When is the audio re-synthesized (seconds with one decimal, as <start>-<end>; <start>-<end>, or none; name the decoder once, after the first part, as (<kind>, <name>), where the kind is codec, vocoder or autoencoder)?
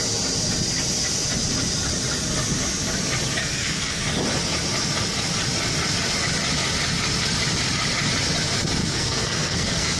3.4-4.0 (codec, SNAC); 8.8-10.0